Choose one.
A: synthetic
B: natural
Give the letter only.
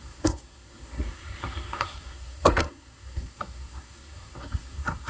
A